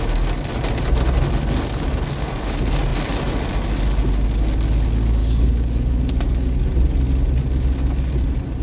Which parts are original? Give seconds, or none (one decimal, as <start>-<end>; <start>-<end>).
0.0-5.2; 6.1-8.6